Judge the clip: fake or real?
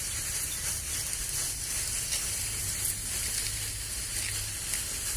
real